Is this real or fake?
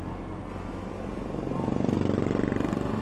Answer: real